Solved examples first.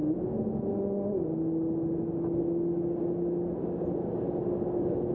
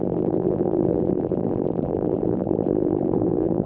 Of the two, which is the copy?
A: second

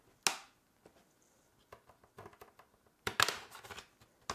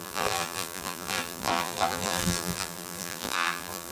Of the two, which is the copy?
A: second